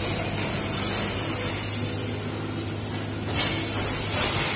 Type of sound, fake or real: real